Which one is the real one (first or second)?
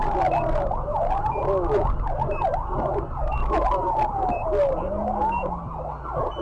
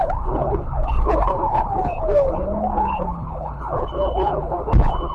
first